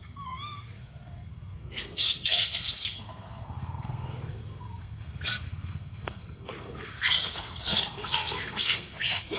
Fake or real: fake